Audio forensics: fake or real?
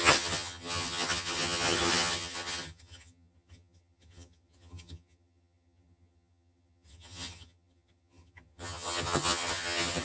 fake